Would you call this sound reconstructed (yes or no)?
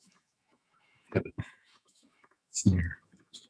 yes